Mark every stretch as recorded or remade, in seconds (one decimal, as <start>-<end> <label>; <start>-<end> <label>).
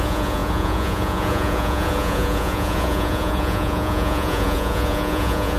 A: 0.0-5.6 remade